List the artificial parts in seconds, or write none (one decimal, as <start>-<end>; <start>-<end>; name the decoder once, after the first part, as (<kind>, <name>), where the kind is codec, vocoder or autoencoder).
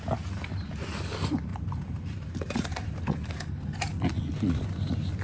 1.5-3.3 (vocoder, BigVGAN v2)